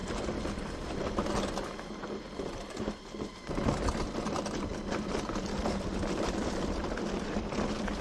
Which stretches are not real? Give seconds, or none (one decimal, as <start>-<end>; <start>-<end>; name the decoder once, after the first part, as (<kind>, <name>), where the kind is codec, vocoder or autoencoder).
4.2-8.0 (vocoder, BigVGAN v2)